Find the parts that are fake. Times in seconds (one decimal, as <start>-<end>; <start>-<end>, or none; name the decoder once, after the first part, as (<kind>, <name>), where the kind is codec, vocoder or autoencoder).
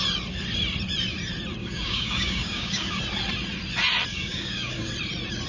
1.6-3.0 (codec, DAC); 4.1-4.9